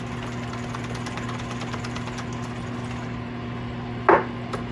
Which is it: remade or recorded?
recorded